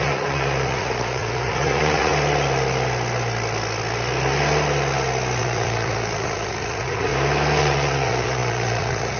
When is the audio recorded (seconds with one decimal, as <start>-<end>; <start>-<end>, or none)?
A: 2.1-5.4; 7.1-7.6